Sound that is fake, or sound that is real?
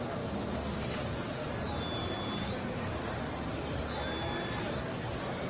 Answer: real